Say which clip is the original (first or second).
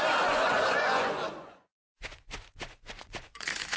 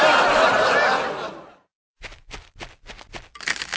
second